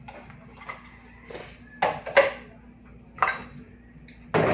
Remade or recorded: recorded